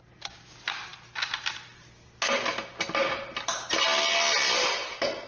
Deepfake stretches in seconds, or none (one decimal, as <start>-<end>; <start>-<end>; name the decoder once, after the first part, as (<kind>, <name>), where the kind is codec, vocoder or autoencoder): none